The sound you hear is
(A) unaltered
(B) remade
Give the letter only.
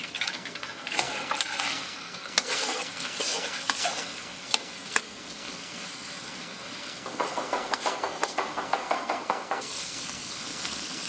B